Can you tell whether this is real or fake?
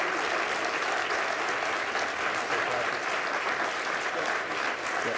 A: real